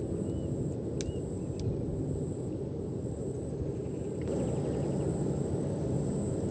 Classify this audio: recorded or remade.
recorded